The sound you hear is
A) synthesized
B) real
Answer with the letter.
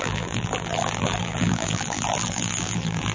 A